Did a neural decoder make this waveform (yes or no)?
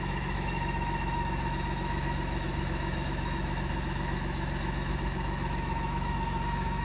yes